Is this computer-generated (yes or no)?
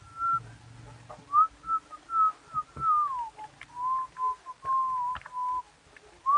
no